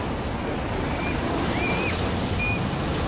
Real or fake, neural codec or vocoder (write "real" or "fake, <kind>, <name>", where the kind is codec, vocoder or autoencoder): real